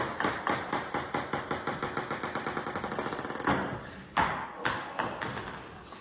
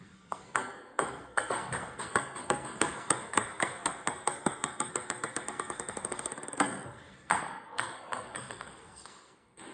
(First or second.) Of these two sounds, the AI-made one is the second